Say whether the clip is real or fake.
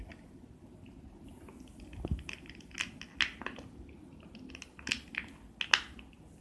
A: real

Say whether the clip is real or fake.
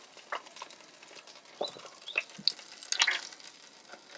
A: real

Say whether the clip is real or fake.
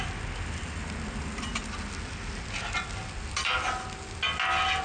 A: real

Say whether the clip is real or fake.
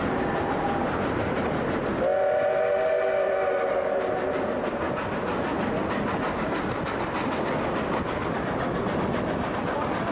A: real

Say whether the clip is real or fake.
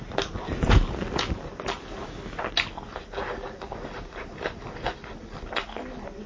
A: real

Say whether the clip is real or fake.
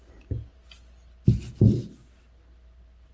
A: real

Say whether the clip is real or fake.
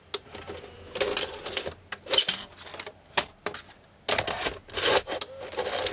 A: real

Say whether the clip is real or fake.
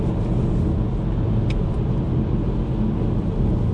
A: real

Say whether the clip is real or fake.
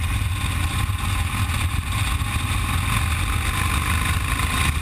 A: real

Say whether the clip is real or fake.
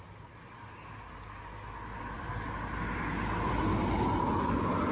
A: real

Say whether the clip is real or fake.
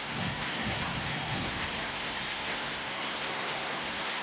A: fake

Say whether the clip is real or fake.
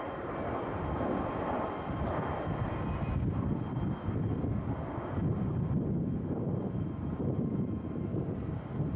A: real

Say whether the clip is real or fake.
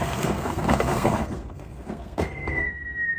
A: fake